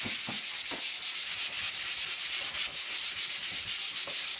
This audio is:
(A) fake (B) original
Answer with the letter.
B